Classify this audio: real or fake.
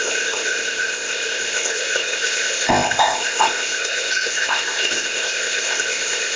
fake